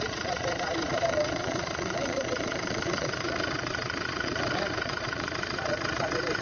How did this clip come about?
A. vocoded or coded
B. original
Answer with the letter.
A